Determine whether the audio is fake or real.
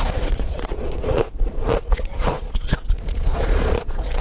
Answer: fake